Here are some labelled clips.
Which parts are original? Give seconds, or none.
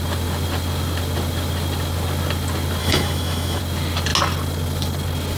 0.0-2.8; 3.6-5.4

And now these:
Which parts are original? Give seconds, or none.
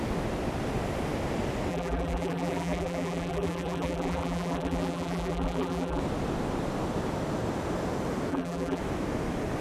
0.0-1.7; 6.0-8.3; 8.8-9.6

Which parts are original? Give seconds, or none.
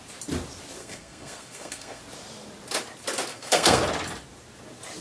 0.0-0.8; 2.0-3.3; 3.8-5.0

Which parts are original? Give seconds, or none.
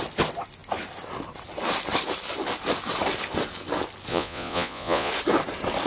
0.0-4.1; 5.1-5.9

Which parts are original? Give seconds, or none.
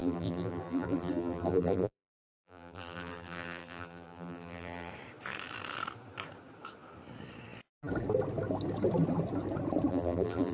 4.9-9.9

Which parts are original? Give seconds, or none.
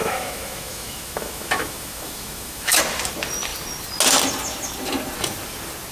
2.8-5.9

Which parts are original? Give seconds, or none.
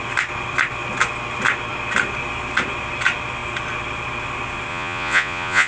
0.0-4.7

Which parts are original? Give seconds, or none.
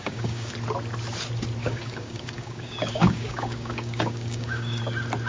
0.5-1.6; 4.8-5.3